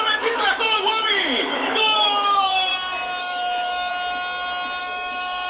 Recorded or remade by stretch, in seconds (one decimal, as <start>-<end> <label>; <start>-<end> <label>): 0.0-2.7 remade; 2.7-3.2 recorded; 3.2-3.9 remade; 3.9-4.8 recorded; 4.8-5.5 remade